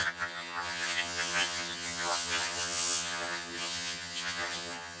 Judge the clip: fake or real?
fake